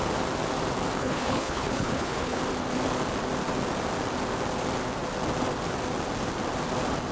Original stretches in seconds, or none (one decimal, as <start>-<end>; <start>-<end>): 0.0-1.0; 2.4-7.1